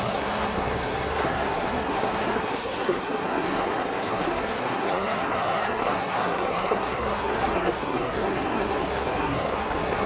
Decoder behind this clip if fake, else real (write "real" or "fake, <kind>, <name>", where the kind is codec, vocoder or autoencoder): fake, codec, SNAC